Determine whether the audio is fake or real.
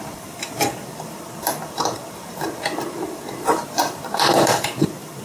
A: fake